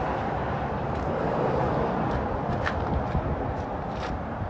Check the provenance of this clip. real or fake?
real